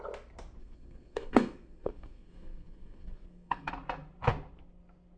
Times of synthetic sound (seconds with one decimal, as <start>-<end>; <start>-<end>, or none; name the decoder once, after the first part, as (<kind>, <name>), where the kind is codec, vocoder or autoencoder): 0.6-3.7 (codec, SNAC)